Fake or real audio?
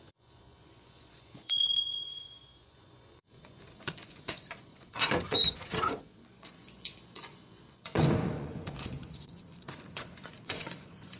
fake